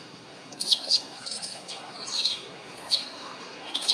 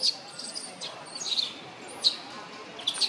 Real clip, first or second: second